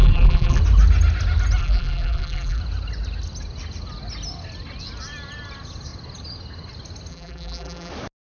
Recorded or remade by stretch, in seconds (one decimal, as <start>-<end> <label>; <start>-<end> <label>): 0.0-0.6 remade; 0.6-1.6 recorded; 1.6-2.6 remade; 2.6-7.1 recorded; 7.1-7.9 remade; 7.9-8.3 recorded